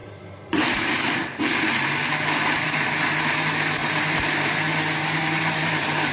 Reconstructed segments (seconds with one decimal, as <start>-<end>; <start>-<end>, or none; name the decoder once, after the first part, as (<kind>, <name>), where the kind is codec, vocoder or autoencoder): 0.0-1.4 (vocoder, BigVGAN v2); 3.8-4.6; 5.0-6.1